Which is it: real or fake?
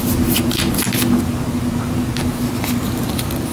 real